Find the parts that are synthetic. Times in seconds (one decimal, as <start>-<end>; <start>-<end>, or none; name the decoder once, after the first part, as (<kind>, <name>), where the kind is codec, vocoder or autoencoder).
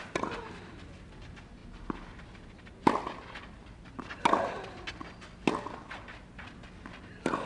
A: none